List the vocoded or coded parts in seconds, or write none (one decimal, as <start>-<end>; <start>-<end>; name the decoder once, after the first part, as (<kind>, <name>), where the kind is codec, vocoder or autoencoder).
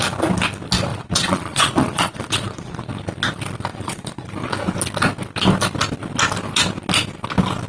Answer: 0.9-2.9 (vocoder, Vocos); 3.7-4.3